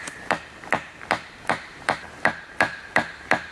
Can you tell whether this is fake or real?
fake